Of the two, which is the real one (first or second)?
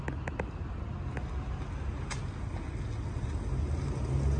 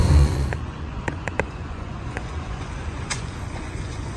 first